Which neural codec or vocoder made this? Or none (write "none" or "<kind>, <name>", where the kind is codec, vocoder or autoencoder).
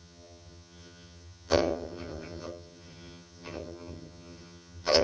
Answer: vocoder, HiFi-GAN